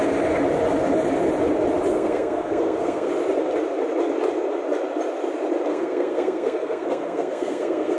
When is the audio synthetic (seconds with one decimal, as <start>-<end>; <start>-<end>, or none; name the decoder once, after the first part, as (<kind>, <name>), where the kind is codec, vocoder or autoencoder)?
1.9-3.1 (codec, SNAC); 5.7-8.0